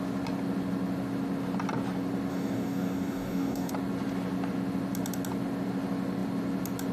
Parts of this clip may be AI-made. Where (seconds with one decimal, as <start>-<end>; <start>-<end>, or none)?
2.3-3.7